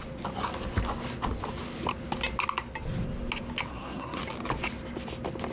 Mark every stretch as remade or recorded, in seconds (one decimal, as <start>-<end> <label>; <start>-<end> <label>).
0.0-3.7 recorded; 3.7-4.2 remade; 4.2-5.5 recorded